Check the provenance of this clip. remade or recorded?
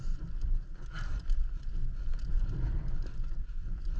recorded